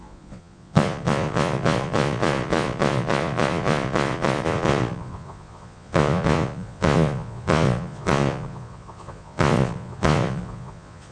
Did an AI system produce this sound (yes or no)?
yes